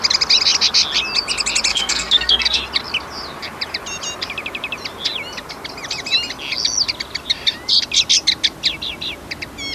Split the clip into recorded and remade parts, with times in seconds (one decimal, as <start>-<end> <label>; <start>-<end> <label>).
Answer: 0.0-1.7 recorded; 1.7-2.6 remade; 2.6-9.7 recorded